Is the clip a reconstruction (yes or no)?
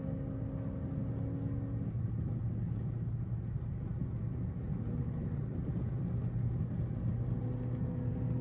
no